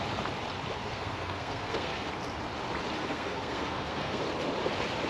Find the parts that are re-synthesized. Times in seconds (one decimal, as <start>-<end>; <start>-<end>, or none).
0.8-2.1; 3.0-4.2